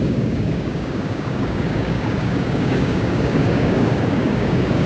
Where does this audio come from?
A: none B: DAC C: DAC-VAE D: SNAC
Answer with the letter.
B